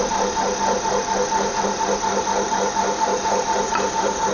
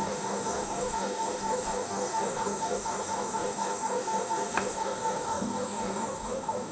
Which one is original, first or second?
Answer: first